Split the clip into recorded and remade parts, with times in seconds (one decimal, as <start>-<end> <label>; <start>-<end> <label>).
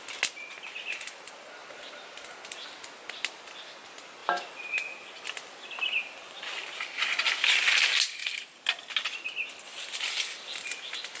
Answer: 0.0-11.2 recorded